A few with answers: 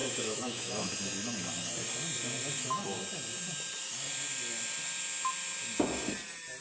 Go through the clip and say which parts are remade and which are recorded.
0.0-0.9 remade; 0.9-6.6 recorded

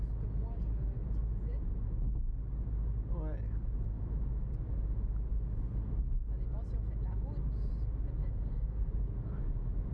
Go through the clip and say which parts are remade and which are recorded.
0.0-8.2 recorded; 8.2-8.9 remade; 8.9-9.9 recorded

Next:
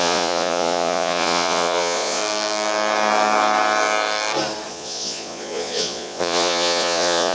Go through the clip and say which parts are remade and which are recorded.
0.0-2.2 remade; 2.2-4.7 recorded; 4.7-7.3 remade